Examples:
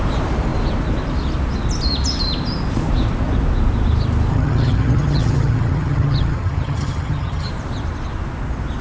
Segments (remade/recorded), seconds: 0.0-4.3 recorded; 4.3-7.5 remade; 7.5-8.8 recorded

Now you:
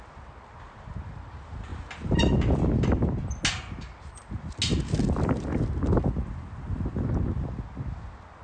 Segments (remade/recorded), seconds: 0.0-8.4 recorded

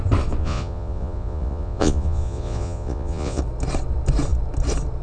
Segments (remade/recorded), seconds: 0.0-0.4 recorded; 0.4-3.4 remade; 3.4-5.0 recorded

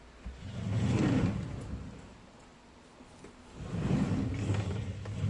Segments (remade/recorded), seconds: 0.0-5.3 recorded

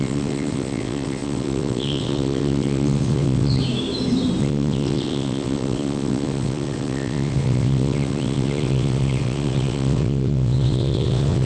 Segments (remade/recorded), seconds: 0.0-3.6 remade; 3.6-4.4 recorded; 4.4-11.5 remade

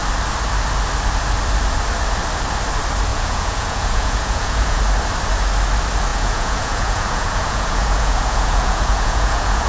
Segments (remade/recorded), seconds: 0.0-3.1 recorded; 3.1-4.8 remade; 4.8-6.1 recorded; 6.1-9.7 remade

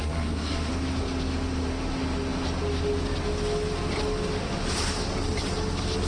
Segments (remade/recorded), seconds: 0.0-0.7 remade; 0.7-6.1 recorded

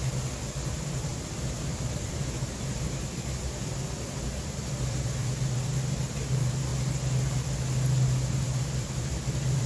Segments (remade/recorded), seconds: 0.0-0.7 recorded; 0.7-6.7 remade; 6.7-8.3 recorded; 8.3-9.7 remade